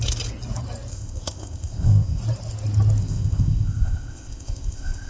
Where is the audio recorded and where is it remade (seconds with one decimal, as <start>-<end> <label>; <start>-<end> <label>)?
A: 0.0-0.9 recorded; 0.9-2.2 remade; 2.2-3.0 recorded; 3.0-5.1 remade